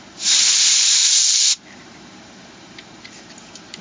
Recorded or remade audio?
remade